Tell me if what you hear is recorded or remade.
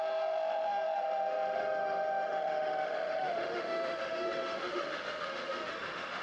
remade